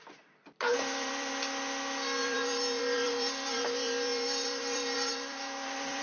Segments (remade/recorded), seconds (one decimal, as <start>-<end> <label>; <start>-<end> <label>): 0.0-0.7 recorded; 0.7-1.3 remade; 1.3-2.2 recorded; 2.2-6.0 remade